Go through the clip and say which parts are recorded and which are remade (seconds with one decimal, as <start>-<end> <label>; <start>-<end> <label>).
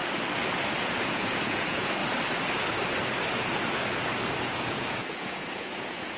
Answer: 0.0-0.8 recorded; 0.8-2.0 remade; 2.0-4.4 recorded; 4.4-6.2 remade